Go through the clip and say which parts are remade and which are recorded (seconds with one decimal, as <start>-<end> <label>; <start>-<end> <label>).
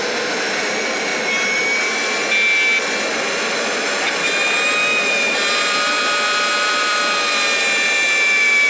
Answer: 0.0-1.1 remade; 1.1-3.2 recorded; 3.2-8.7 remade